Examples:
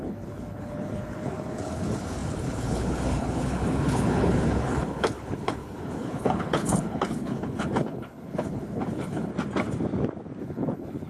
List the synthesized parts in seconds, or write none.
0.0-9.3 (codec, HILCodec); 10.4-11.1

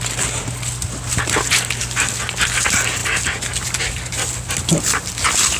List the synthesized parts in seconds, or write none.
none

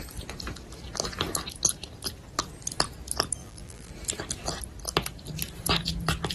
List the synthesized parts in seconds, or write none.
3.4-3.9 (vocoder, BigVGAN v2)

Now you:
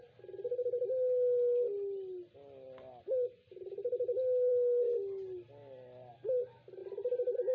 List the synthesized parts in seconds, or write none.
none

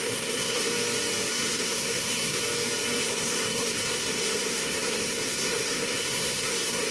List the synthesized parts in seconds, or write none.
0.0-0.7 (codec, SNAC); 1.3-2.4; 3.0-6.9

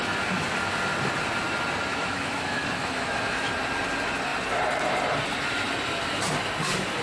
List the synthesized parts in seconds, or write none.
1.9-3.5 (autoencoder, DAC-VAE)

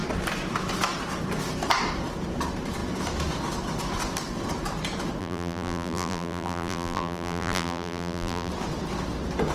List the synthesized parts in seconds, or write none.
5.2-8.5 (vocoder, BigVGAN v2)